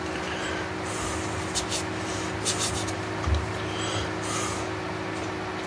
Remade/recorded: recorded